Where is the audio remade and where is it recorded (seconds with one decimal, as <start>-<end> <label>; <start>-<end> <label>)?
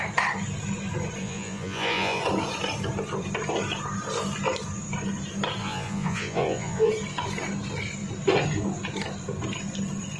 0.0-1.2 recorded; 1.2-2.2 remade; 2.2-5.6 recorded; 5.6-6.9 remade; 6.9-10.2 recorded